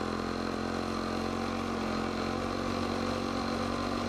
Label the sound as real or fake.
real